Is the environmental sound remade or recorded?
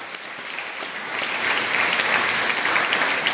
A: recorded